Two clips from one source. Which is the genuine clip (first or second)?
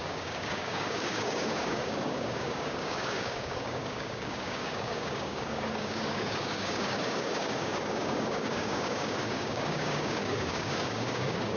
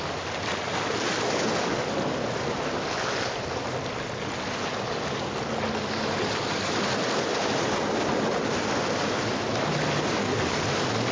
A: second